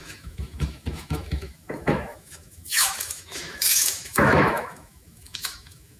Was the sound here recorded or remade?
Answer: remade